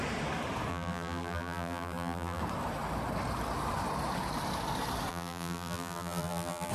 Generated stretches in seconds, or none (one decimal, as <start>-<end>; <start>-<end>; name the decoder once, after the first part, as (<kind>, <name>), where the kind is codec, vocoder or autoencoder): 0.7-2.4 (vocoder, BigVGAN v2); 5.1-6.7